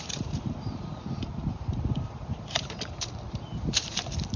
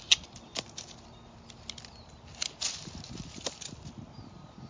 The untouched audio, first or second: second